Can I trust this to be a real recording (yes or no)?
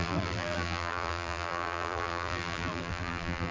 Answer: no